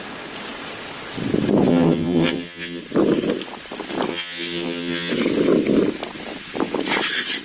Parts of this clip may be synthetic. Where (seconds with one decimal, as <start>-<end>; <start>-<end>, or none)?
1.7-2.8; 4.1-5.1

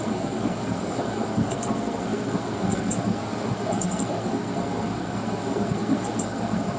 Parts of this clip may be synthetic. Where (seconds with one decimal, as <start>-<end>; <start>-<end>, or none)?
0.0-6.8

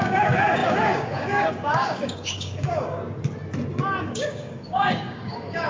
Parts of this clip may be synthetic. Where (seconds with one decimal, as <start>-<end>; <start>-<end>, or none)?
0.0-3.0; 4.0-5.7

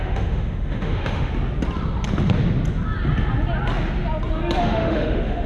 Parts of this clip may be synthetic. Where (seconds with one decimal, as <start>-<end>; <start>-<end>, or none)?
0.0-1.3; 4.6-5.5

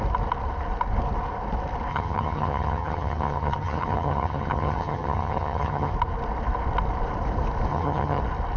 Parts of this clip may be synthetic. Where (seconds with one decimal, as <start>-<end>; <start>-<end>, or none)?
1.9-5.9; 7.7-8.2

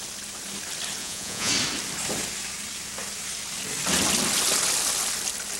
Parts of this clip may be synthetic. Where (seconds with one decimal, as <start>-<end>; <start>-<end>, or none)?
1.0-1.5